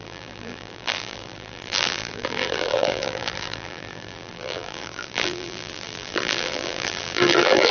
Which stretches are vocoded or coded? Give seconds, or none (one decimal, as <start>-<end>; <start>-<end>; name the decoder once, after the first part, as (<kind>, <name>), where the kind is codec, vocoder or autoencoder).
0.0-7.7 (vocoder, BigVGAN v2)